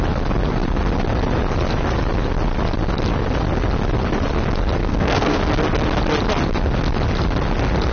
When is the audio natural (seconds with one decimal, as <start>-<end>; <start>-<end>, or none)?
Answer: 0.0-4.8; 5.4-7.9